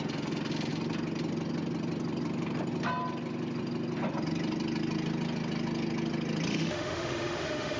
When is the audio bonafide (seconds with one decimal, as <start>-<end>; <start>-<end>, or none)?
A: 0.0-6.5